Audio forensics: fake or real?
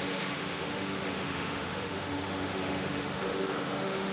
fake